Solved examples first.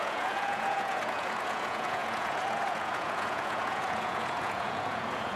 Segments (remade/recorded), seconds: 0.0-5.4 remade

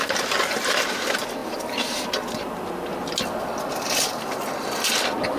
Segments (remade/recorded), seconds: 0.0-5.4 recorded

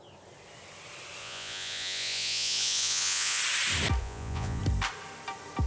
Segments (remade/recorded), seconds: 0.0-1.2 recorded; 1.2-3.4 remade; 3.4-4.0 recorded; 4.0-4.6 remade; 4.6-5.7 recorded

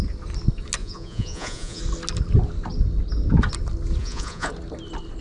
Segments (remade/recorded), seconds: 0.0-0.8 recorded; 0.8-1.8 remade; 1.8-4.0 recorded; 4.0-4.5 remade; 4.5-5.2 recorded

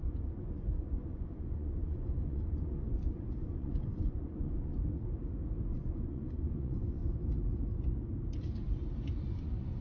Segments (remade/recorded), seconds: 0.0-4.8 remade; 4.8-5.7 recorded; 5.7-7.0 remade; 7.0-9.3 recorded; 9.3-9.8 remade

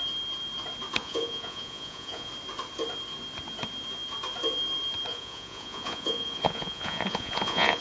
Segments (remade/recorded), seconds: 0.0-1.0 recorded; 1.0-2.3 remade; 2.3-5.1 recorded; 5.1-7.8 remade